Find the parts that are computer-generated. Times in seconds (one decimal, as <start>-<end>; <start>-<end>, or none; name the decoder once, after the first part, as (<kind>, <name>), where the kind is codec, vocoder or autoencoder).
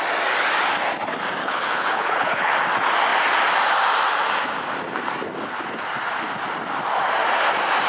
1.4-2.5 (codec, HILCodec)